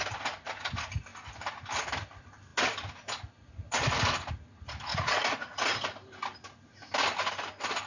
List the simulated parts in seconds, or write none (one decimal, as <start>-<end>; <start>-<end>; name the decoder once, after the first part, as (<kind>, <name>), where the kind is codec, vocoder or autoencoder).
4.9-5.6 (vocoder, Vocos)